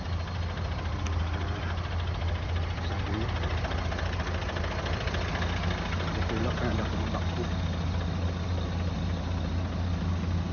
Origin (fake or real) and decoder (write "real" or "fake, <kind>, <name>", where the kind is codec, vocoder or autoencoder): real